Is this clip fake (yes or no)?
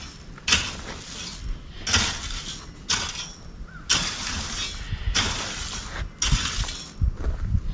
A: no